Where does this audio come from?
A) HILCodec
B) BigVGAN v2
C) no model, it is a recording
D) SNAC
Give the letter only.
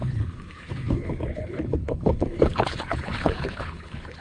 A